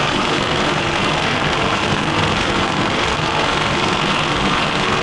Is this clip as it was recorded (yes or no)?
no